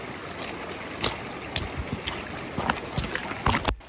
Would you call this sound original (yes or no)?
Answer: yes